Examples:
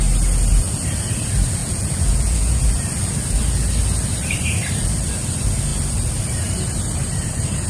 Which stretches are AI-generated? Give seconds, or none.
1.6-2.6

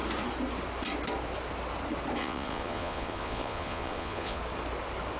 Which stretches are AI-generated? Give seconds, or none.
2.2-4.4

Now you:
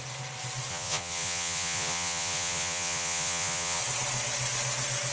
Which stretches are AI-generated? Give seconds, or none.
0.7-3.8

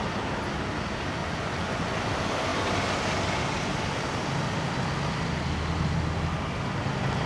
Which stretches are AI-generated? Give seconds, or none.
1.2-2.1

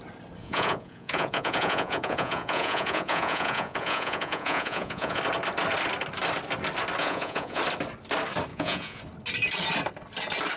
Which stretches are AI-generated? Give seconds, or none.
0.4-5.2; 7.0-7.6; 8.5-9.0

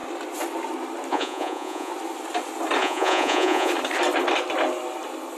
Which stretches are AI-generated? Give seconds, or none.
1.1-1.9; 2.8-3.7

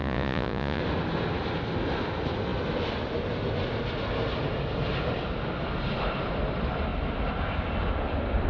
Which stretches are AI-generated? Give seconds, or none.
0.0-0.8

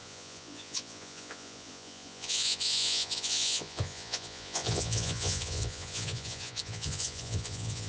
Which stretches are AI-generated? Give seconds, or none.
0.0-7.9